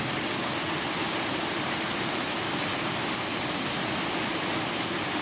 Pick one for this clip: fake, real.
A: real